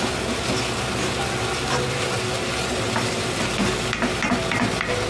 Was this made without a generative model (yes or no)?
yes